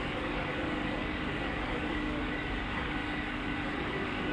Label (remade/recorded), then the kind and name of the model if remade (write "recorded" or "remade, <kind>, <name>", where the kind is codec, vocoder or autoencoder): remade, codec, DAC